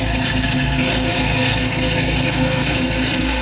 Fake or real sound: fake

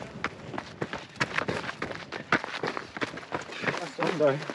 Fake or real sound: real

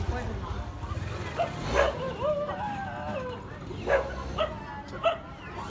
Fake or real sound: real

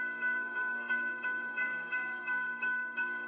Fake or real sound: fake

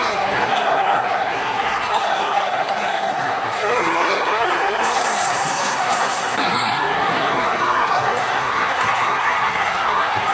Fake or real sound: fake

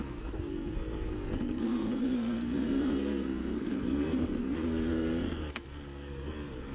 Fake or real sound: fake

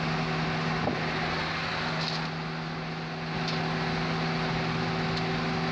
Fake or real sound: real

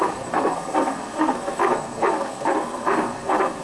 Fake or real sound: fake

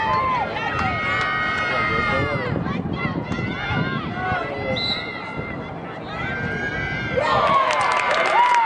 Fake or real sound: real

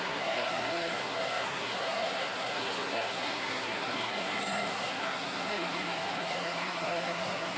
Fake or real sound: fake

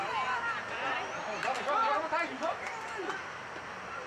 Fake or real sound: real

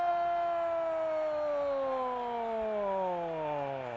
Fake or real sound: real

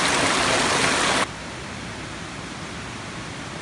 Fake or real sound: real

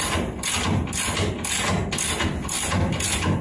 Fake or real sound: real